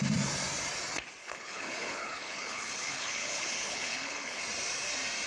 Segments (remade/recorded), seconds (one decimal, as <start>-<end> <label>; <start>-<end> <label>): 0.0-1.2 recorded; 1.2-4.4 remade; 4.4-5.3 recorded